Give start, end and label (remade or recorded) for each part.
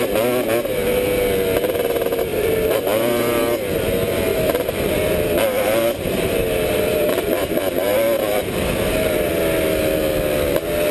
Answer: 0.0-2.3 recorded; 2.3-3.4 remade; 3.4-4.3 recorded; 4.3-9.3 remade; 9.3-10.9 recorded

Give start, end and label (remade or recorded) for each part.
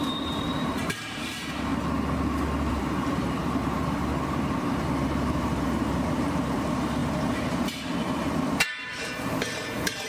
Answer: 0.0-1.7 remade; 1.7-2.7 recorded; 2.7-10.1 remade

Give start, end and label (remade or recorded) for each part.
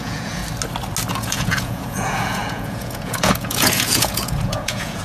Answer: 0.0-0.4 remade; 0.4-1.1 recorded; 1.1-5.0 remade